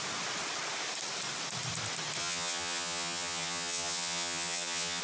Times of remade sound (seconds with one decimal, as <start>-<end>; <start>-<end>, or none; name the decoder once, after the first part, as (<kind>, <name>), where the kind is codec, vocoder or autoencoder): 2.2-5.0 (vocoder, HiFi-GAN)